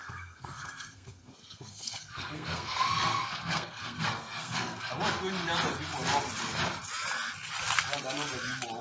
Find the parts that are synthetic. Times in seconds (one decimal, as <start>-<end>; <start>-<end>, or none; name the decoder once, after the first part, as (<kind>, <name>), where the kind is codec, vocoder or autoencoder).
0.0-4.9 (codec, SNAC)